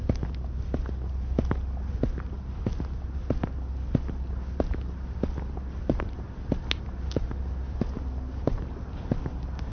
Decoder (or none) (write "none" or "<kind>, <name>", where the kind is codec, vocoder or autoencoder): none